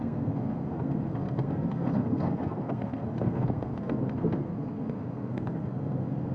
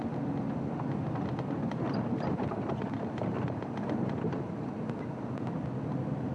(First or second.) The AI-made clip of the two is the first